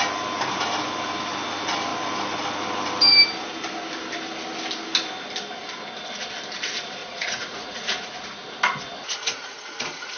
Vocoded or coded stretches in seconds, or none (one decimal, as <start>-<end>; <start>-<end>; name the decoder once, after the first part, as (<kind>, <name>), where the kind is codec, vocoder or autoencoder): 7.0-8.2 (vocoder, Vocos); 9.0-10.2

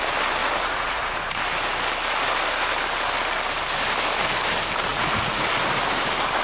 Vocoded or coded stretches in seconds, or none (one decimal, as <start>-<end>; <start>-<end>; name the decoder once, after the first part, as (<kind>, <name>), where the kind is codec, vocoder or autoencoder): 0.4-1.3 (vocoder, Vocos); 4.9-5.5

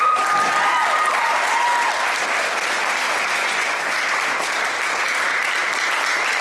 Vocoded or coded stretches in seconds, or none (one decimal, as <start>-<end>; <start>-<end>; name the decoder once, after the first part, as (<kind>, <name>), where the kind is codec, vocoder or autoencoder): 3.4-3.9 (vocoder, Vocos)

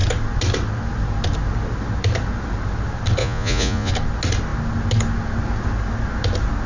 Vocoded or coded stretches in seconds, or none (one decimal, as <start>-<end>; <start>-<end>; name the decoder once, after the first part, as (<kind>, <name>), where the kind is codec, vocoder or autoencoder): 3.2-3.9 (vocoder, Vocos)

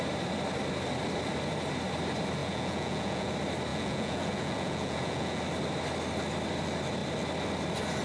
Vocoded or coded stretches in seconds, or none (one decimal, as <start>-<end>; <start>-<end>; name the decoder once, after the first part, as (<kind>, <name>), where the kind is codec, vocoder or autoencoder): 2.4-3.3 (vocoder, Vocos); 3.7-5.4

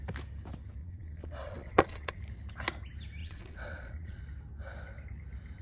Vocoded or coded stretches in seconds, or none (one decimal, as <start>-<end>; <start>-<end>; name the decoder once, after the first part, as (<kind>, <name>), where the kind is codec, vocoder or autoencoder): 0.8-2.2 (vocoder, Vocos); 3.2-4.2